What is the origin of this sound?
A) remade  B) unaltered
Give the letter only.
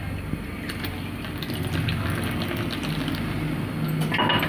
B